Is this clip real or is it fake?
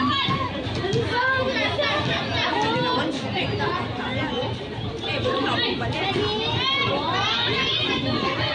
real